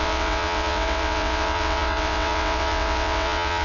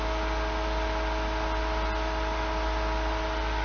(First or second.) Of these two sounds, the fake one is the first